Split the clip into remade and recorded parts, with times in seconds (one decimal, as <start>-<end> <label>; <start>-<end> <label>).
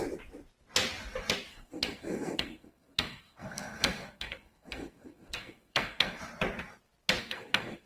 0.0-1.5 recorded; 1.5-6.2 remade; 6.2-7.2 recorded; 7.2-7.9 remade